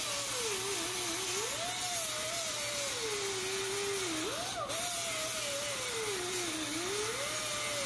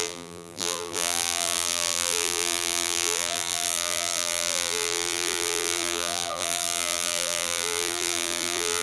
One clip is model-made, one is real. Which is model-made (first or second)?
second